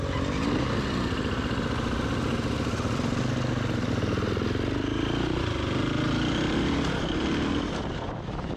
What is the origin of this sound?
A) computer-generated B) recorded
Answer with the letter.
B